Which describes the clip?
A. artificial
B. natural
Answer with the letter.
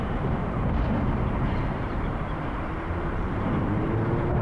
A